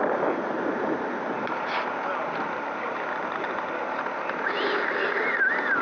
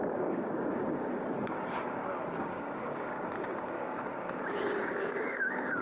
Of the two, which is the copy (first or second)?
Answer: second